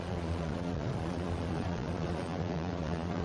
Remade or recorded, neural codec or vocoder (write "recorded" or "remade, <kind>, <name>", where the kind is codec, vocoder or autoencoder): remade, vocoder, Vocos